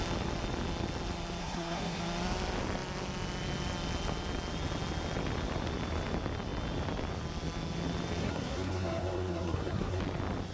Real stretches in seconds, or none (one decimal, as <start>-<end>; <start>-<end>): 0.0-1.4; 2.0-8.2; 10.0-10.5